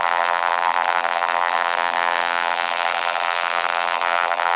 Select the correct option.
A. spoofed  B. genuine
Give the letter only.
A